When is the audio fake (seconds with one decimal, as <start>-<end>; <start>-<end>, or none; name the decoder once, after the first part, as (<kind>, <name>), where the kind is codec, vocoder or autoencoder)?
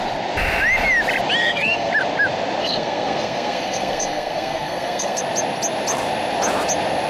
1.4-1.9 (codec, SNAC); 2.6-5.2